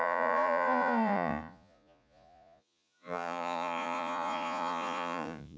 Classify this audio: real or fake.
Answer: fake